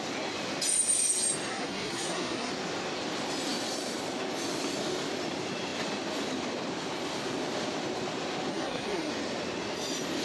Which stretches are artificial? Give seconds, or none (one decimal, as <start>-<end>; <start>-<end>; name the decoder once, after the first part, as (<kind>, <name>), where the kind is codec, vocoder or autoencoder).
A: 1.5-2.5 (codec, SNAC); 8.5-9.1